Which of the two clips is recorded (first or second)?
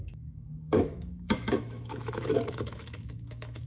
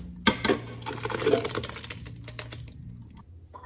second